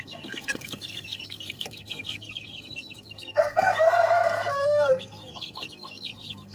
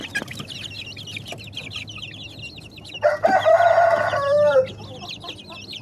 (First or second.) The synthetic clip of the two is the first